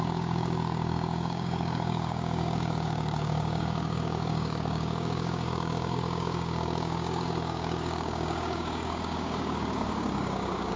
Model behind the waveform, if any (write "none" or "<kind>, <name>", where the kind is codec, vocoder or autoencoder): codec, DAC